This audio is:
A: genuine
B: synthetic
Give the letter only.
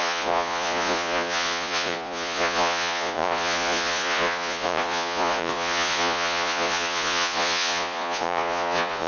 B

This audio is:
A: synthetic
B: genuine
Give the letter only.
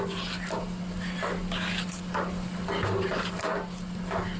B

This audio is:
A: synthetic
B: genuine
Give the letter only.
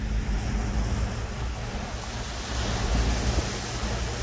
B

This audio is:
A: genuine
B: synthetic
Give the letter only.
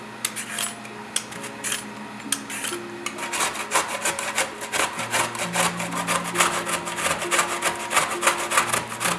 A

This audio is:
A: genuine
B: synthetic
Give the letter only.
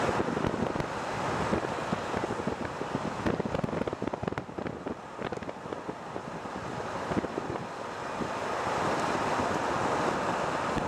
A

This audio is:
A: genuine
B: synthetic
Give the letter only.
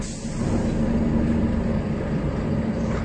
A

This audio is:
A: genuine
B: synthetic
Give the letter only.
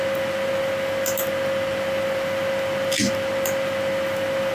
A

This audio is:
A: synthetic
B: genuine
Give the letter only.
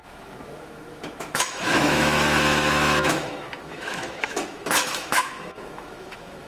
A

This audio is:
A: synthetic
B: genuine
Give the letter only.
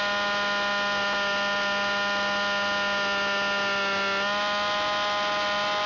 B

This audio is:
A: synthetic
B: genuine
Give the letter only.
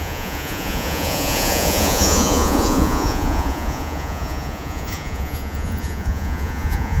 A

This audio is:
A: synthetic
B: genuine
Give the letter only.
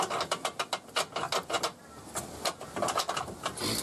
B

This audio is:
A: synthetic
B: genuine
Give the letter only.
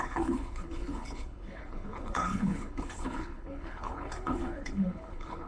A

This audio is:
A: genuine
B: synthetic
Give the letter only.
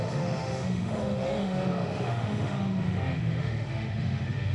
B